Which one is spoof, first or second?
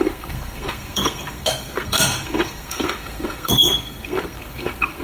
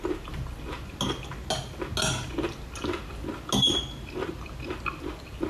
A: first